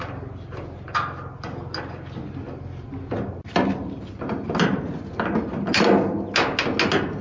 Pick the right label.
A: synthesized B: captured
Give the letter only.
B